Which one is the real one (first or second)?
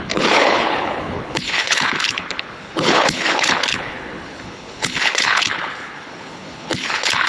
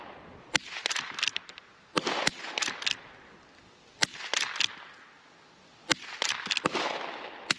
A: second